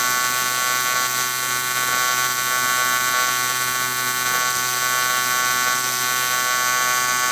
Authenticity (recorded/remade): recorded